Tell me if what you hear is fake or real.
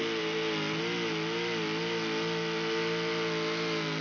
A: real